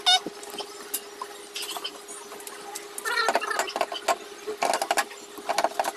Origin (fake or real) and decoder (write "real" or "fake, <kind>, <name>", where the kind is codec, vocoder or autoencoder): real